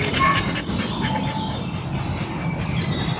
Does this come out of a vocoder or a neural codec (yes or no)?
no